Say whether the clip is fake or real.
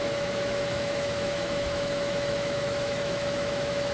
fake